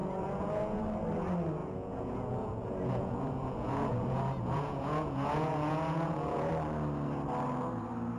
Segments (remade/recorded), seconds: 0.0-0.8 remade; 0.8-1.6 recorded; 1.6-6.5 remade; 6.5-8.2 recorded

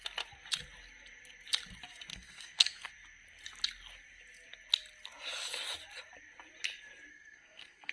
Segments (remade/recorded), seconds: 0.0-2.1 recorded; 2.1-2.9 remade; 2.9-7.1 recorded; 7.1-7.9 remade

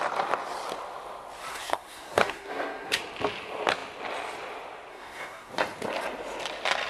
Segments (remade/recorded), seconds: 0.0-1.5 recorded; 1.5-3.0 remade; 3.0-4.9 recorded; 4.9-5.5 remade; 5.5-6.9 recorded

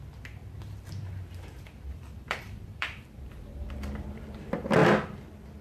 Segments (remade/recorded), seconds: 0.0-0.4 recorded; 0.4-3.8 remade; 3.8-5.6 recorded

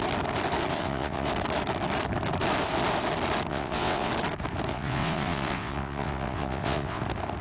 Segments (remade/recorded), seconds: 0.0-0.7 recorded; 0.7-1.3 remade; 1.3-3.5 recorded; 3.5-4.1 remade; 4.1-4.7 recorded; 4.7-7.0 remade; 7.0-7.4 recorded

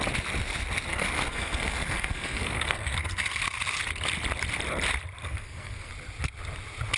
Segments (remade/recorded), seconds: 0.0-0.9 recorded; 0.9-3.4 remade; 3.4-5.2 recorded; 5.2-5.9 remade; 5.9-7.0 recorded

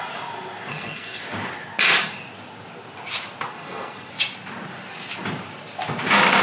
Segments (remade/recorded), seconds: 0.0-0.7 recorded; 0.7-1.2 remade; 1.2-3.5 recorded; 3.5-4.1 remade; 4.1-6.4 recorded

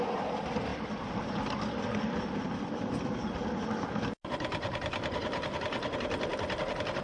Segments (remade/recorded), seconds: 0.0-7.0 recorded